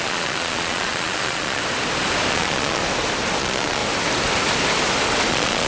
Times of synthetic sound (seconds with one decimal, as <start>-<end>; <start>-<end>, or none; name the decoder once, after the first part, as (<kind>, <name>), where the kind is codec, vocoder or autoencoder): 0.0-1.6 (vocoder, Vocos); 2.3-2.8; 3.4-3.8; 5.3-5.7